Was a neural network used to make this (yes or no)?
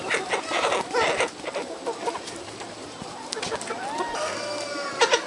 no